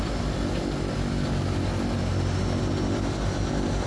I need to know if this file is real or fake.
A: real